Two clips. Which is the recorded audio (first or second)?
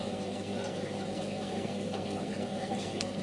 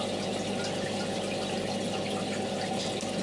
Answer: second